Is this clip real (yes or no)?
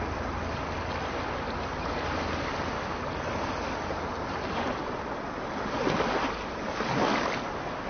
yes